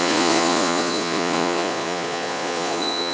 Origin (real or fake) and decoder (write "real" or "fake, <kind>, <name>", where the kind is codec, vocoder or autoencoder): fake, vocoder, Vocos